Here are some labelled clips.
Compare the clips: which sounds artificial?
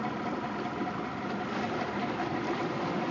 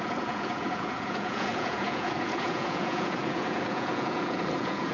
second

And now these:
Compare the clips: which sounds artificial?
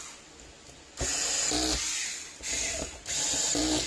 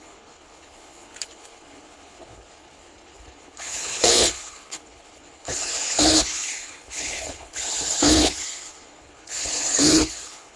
second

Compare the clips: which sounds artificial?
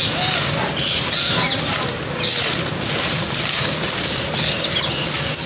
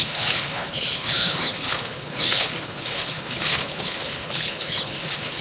second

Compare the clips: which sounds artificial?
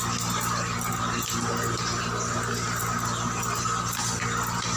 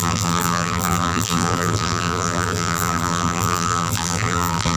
second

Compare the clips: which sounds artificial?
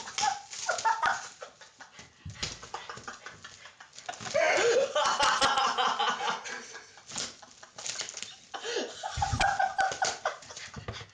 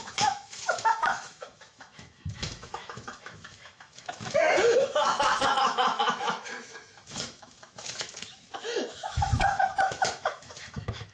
second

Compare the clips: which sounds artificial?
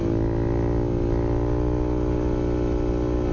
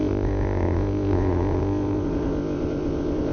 second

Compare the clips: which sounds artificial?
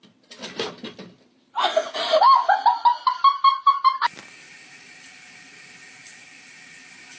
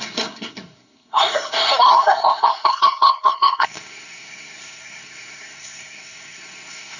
second